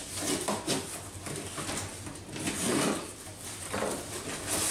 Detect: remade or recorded recorded